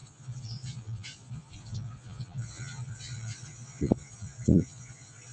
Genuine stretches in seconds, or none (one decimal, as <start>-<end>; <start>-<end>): none